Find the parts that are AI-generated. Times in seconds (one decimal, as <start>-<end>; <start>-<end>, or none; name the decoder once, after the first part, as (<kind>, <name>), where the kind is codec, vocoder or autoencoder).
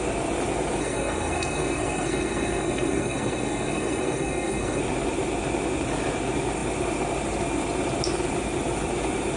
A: 0.8-4.8 (codec, SNAC)